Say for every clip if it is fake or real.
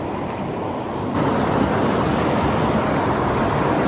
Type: real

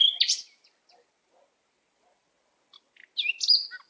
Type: real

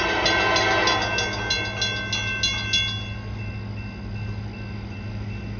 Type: real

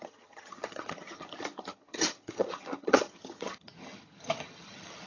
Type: fake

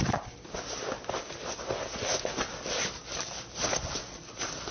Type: real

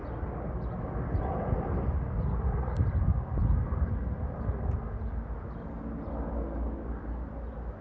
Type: real